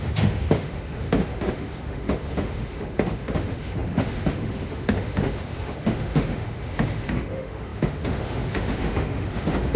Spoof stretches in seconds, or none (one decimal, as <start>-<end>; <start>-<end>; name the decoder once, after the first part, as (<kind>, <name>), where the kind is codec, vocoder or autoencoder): 0.0-9.8 (autoencoder, DAC-VAE)